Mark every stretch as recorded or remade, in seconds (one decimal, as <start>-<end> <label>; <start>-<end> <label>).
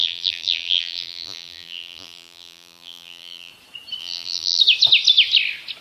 0.0-3.5 remade; 3.5-4.0 recorded; 4.0-4.6 remade; 4.6-5.8 recorded